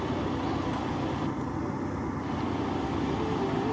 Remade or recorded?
recorded